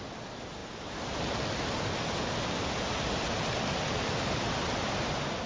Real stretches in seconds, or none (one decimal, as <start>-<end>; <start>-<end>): 0.0-5.5